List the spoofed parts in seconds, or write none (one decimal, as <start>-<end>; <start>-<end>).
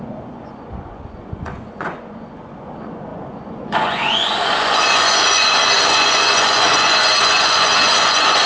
0.0-8.5